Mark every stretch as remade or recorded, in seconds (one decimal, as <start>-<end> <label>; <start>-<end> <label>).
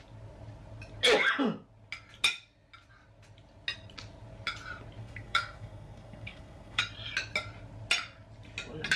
0.0-5.0 recorded; 5.0-6.8 remade; 6.8-9.0 recorded